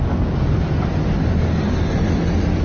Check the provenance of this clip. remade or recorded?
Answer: recorded